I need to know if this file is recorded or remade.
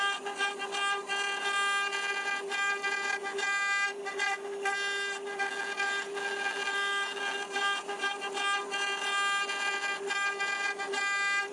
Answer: recorded